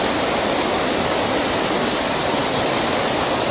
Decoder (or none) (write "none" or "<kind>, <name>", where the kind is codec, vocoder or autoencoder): none